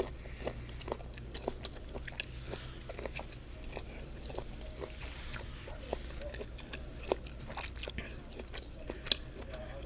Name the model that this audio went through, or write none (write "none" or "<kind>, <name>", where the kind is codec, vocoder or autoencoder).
none